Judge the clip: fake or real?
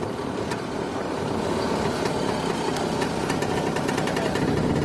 real